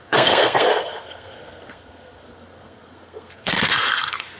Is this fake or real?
fake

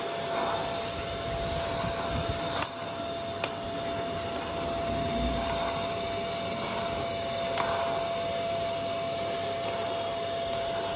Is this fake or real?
real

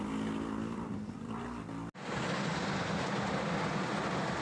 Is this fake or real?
real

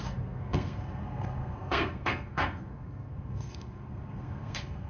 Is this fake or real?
fake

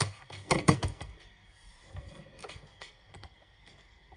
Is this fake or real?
fake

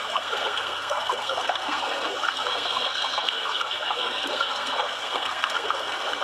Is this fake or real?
fake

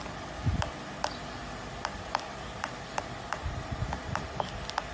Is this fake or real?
real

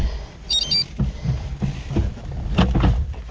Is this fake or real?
real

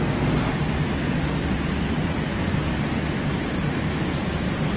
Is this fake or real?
real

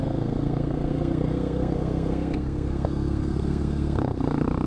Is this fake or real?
fake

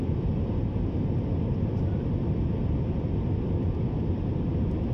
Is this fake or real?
real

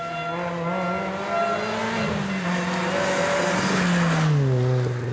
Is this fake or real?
real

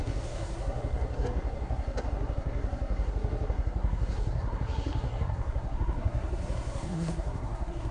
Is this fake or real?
fake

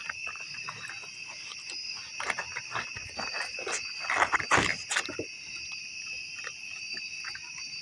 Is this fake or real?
real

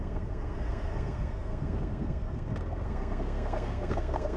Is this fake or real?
fake